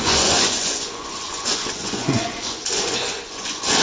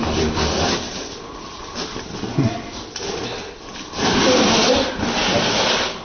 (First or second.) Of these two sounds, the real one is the second